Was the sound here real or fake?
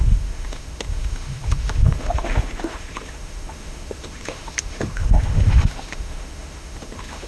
fake